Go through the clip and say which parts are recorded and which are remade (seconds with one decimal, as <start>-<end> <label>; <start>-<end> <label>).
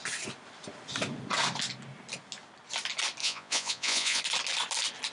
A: 0.0-3.2 recorded; 3.2-4.2 remade; 4.2-5.1 recorded